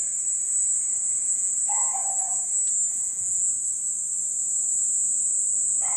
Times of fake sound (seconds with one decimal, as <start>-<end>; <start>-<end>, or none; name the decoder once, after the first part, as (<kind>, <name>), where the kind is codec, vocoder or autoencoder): 0.9-1.5 (vocoder, Vocos); 2.9-3.5